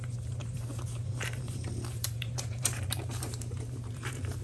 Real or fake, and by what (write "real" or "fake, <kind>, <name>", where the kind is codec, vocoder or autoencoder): fake, vocoder, BigVGAN v2